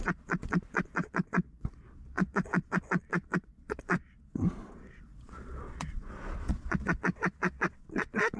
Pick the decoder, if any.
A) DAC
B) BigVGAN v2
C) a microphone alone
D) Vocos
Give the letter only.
D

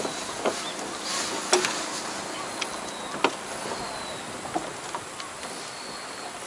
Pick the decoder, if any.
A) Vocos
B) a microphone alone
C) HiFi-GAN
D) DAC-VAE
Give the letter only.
B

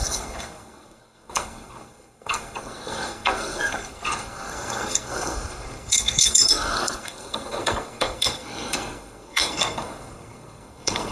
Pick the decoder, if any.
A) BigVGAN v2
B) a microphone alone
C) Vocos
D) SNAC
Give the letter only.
D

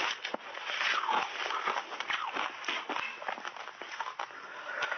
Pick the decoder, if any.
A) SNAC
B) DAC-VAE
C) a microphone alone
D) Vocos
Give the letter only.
C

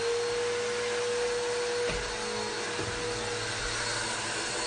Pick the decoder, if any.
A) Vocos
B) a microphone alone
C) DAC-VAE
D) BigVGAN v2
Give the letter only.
B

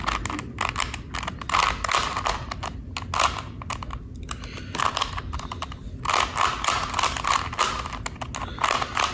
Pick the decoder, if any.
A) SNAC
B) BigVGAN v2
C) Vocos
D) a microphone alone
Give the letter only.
D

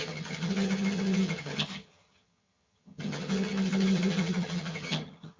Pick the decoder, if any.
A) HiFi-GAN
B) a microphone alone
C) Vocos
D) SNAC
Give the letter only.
A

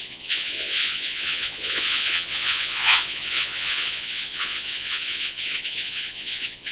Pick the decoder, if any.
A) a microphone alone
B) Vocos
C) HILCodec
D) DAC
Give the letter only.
B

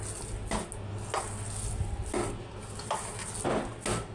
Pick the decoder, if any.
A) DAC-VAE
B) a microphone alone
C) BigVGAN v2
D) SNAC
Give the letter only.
B